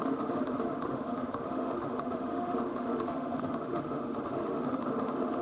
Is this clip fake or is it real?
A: fake